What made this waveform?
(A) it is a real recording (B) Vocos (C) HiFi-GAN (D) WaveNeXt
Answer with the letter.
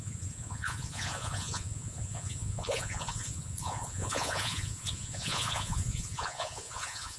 B